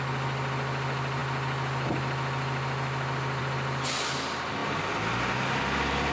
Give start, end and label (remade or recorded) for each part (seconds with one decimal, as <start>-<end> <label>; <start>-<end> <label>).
0.0-6.1 recorded